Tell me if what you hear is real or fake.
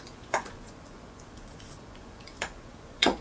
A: fake